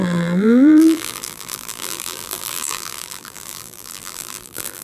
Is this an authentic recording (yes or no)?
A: no